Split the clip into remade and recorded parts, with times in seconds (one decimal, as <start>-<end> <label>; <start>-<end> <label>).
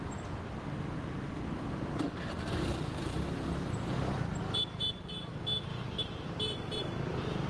0.0-7.5 recorded